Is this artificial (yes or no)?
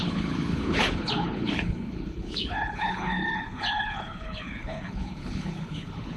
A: yes